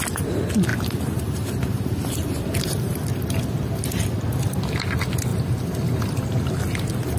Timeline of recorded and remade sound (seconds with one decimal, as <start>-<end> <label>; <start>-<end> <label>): 0.0-0.7 recorded; 0.7-3.4 remade; 3.4-5.3 recorded; 5.3-6.5 remade; 6.5-7.2 recorded